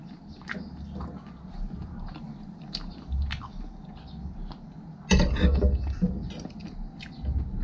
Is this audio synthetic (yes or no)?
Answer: no